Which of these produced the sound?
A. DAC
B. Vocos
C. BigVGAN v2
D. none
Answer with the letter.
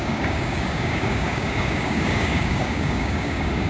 A